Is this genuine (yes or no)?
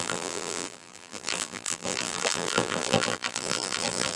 no